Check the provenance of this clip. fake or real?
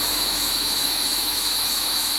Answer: fake